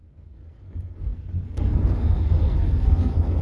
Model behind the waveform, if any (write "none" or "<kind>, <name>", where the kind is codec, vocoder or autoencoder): codec, SNAC